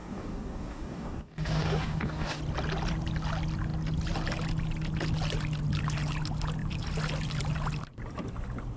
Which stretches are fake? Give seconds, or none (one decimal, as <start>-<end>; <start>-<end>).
0.0-2.4